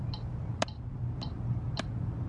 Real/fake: fake